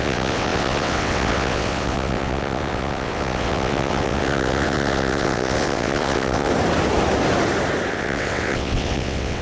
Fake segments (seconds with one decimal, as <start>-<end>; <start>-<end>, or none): 0.0-6.5; 7.9-9.4